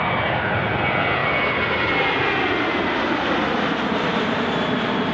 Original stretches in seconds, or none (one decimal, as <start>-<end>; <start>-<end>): 0.0-1.2; 2.8-5.1